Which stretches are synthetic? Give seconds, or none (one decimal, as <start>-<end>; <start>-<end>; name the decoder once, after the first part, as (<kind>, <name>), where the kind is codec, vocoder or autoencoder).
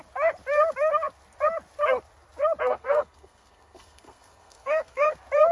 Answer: 2.7-5.1 (codec, SNAC)